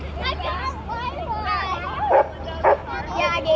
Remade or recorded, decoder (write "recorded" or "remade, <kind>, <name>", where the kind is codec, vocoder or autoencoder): recorded